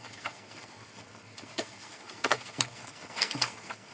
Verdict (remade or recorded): remade